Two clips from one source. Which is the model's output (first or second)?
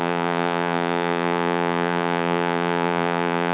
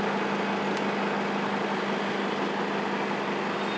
first